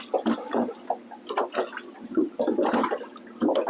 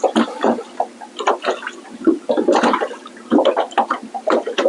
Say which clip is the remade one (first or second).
second